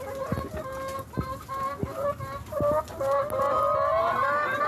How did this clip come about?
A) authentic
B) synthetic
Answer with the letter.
A